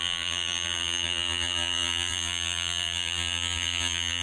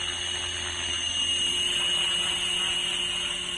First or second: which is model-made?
first